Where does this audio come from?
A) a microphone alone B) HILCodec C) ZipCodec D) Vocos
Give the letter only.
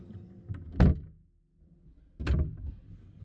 A